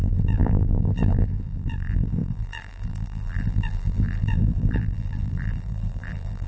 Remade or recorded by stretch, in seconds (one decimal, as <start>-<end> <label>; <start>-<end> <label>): 0.0-6.5 remade